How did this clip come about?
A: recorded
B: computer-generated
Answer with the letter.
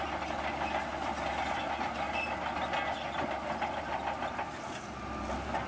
A